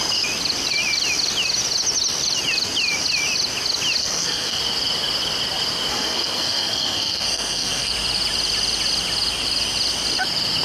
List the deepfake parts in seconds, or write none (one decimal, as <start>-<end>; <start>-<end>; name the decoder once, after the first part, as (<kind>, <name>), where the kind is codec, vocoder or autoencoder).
4.0-4.6 (codec, SNAC); 5.9-7.9